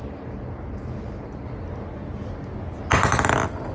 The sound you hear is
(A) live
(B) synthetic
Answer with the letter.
A